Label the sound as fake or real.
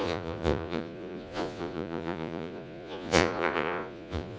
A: fake